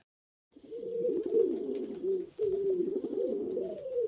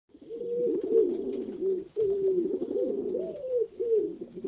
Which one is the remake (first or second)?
first